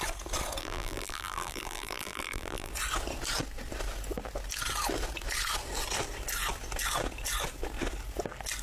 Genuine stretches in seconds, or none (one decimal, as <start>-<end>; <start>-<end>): 0.0-0.6; 2.7-8.6